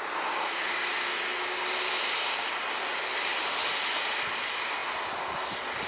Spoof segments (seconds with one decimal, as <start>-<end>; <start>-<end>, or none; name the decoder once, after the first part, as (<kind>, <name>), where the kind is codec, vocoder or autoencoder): none